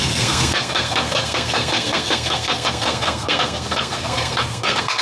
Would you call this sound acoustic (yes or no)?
no